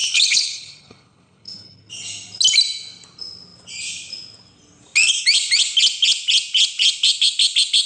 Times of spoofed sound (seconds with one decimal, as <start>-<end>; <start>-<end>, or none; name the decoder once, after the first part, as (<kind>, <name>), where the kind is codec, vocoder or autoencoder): 0.0-1.9 (codec, HILCodec)